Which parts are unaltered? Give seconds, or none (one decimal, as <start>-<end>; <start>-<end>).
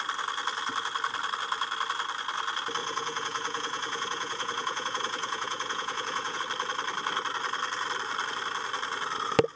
0.0-2.8; 6.4-9.6